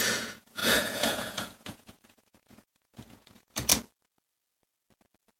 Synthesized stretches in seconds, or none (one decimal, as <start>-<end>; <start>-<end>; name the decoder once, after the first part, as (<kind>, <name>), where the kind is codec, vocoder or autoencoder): 0.0-3.7 (vocoder, Vocos)